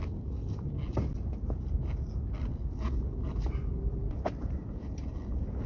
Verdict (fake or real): real